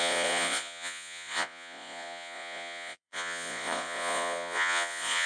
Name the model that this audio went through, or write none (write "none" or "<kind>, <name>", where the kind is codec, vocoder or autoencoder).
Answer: vocoder, Vocos